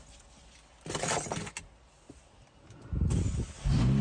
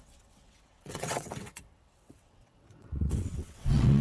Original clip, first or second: first